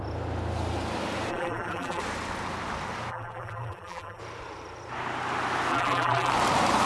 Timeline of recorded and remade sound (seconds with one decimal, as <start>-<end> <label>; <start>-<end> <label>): 0.0-1.3 recorded; 1.3-2.0 remade; 2.0-3.1 recorded; 3.1-4.2 remade; 4.2-5.7 recorded; 5.7-6.3 remade; 6.3-6.9 recorded